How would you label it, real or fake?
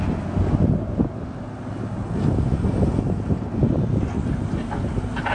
real